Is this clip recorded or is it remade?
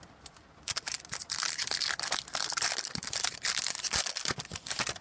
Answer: recorded